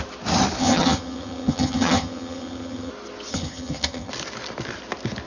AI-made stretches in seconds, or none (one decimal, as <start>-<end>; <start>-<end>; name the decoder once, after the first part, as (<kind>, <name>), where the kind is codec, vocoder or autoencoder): 0.6-2.9 (vocoder, HiFi-GAN); 3.3-4.1